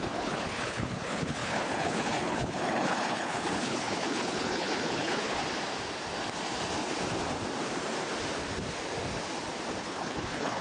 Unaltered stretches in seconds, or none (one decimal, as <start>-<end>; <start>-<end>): 5.4-9.8